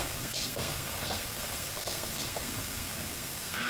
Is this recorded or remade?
remade